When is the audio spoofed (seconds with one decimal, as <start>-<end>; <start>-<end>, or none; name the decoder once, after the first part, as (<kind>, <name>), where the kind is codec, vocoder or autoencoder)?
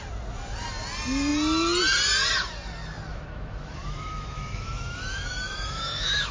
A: 3.1-6.3 (autoencoder, DAC-VAE)